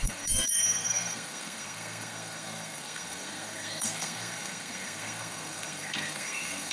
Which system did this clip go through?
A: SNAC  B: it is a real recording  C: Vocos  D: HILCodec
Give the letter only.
A